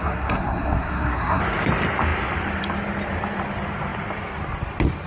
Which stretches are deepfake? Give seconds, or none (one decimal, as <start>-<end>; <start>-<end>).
0.0-1.4